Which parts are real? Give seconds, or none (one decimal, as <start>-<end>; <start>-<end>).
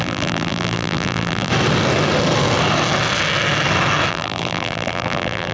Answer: 1.5-4.1